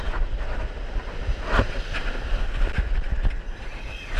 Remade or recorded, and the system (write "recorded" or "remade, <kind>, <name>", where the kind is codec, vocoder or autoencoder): recorded